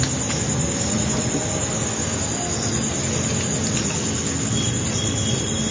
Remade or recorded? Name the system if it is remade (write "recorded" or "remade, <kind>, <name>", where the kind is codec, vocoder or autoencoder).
recorded